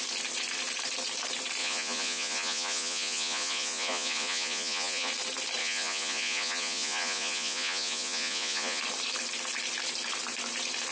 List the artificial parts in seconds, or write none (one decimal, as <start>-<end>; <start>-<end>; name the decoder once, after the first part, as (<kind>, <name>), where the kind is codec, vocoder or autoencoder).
1.6-5.1 (vocoder, Vocos); 5.6-8.8